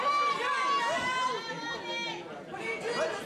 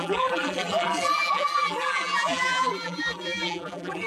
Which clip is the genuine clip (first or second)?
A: first